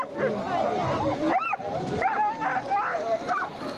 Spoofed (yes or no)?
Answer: no